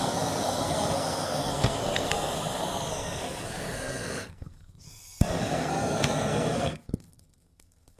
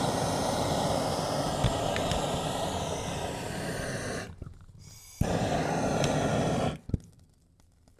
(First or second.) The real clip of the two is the second